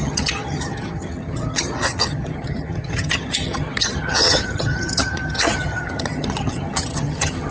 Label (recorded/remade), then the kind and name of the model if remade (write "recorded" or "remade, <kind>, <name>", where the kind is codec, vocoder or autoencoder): remade, vocoder, HiFi-GAN